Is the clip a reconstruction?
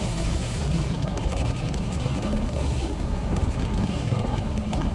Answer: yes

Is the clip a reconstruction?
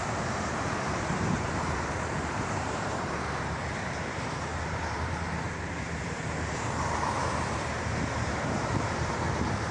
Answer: yes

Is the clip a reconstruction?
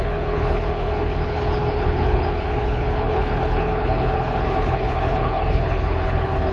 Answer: yes